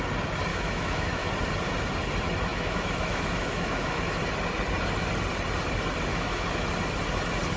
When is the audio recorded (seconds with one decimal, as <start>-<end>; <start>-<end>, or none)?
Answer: 0.0-0.5; 1.3-2.5; 4.2-6.1; 6.7-7.6